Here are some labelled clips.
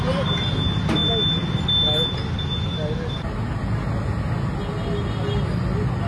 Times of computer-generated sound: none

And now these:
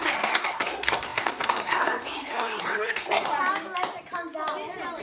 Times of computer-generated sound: 0.0-3.3 (codec, SNAC)

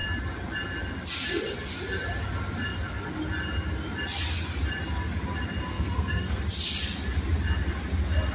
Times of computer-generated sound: 5.7-6.4 (codec, SNAC)

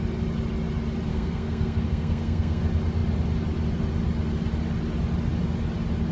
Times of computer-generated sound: 1.1-2.6 (codec, SNAC)

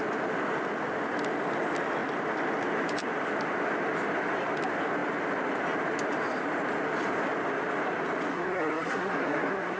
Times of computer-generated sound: 8.3-9.8 (codec, SNAC)

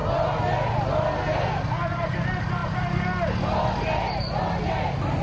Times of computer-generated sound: none

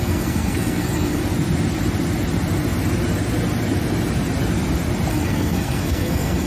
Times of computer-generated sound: 0.0-1.2 (codec, SNAC); 5.1-6.5